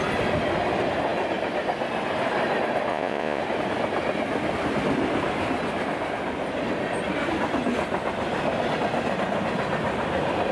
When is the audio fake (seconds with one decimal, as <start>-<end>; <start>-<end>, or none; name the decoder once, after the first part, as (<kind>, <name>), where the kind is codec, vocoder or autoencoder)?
2.9-3.4 (vocoder, Vocos)